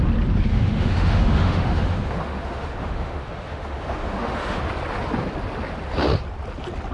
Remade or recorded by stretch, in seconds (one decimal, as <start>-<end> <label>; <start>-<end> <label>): 0.0-0.5 recorded; 0.5-4.6 remade; 4.6-6.9 recorded